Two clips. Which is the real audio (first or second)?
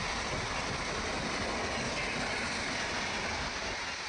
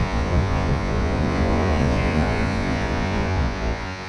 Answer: first